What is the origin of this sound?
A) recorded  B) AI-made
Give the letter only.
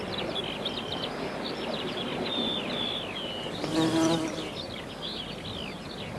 A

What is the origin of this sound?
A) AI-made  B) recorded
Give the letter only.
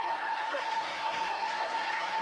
A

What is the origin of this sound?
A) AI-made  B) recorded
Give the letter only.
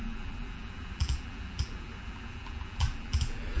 A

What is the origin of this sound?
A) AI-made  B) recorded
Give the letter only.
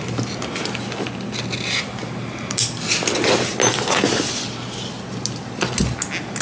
B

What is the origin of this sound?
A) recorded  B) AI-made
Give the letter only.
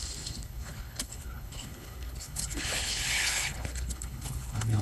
B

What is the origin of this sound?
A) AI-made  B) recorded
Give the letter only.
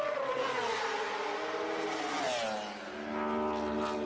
B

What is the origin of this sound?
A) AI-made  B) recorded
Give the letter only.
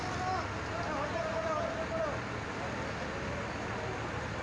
B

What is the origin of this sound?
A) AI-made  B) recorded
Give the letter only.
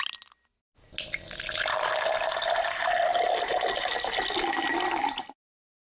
B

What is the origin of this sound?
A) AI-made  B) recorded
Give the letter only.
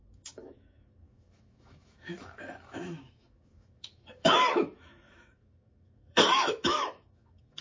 A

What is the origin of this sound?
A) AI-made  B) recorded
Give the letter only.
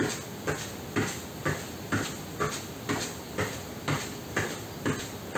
B